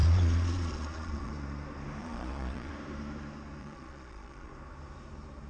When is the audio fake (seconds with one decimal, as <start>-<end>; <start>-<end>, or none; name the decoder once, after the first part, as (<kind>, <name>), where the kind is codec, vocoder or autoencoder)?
0.0-1.3 (vocoder, Vocos); 2.0-2.7; 3.6-4.5